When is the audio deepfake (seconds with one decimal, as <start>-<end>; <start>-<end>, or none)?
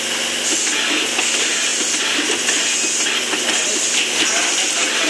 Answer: none